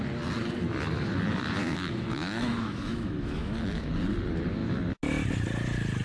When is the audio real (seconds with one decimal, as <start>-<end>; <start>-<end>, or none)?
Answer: 0.0-1.6; 3.9-6.0